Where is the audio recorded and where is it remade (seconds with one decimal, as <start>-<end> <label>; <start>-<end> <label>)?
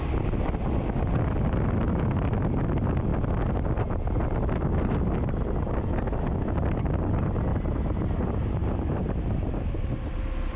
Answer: 0.0-7.5 recorded; 7.5-10.0 remade; 10.0-10.6 recorded